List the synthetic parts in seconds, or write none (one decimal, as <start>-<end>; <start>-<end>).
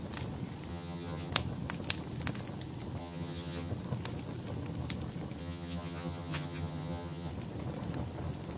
0.7-1.3; 3.0-3.7; 5.4-7.3